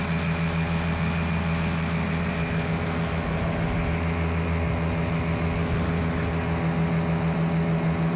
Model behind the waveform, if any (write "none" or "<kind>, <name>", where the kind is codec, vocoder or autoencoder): none